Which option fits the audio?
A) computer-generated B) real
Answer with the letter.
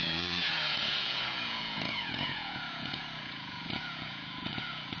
A